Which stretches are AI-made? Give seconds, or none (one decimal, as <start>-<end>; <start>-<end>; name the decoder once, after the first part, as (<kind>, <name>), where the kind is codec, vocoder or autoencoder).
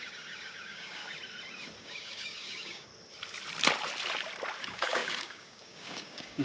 0.0-1.0 (codec, DAC); 1.8-2.9; 4.6-6.4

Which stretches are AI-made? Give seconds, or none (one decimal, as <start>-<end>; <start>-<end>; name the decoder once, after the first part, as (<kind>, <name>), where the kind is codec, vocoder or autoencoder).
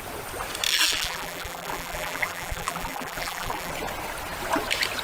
0.7-3.7 (vocoder, BigVGAN v2)